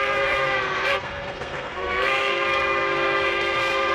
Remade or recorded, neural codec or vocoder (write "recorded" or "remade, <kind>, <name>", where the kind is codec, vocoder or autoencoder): remade, codec, SNAC